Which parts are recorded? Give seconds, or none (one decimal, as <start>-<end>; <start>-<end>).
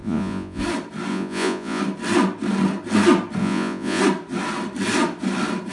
0.6-1.1; 1.8-3.4; 4.0-5.7